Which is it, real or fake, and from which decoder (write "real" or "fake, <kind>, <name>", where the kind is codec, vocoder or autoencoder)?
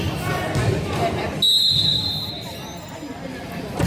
real